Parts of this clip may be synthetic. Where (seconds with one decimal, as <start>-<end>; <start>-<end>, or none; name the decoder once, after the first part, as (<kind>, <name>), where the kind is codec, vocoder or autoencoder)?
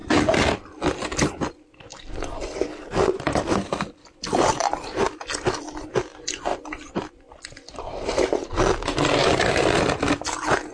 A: 0.0-0.8 (vocoder, BigVGAN v2); 1.9-6.0